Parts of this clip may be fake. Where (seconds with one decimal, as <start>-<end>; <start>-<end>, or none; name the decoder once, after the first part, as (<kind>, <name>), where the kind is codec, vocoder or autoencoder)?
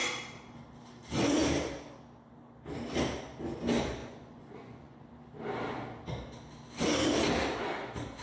4.0-5.1 (vocoder, Vocos)